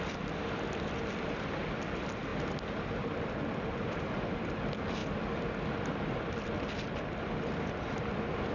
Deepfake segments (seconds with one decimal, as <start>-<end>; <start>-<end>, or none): 0.0-2.3; 3.0-5.0; 6.0-8.5